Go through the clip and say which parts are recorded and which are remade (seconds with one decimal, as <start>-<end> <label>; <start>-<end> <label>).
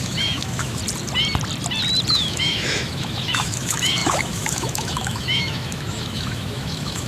0.0-0.8 remade; 0.8-2.1 recorded; 2.1-7.1 remade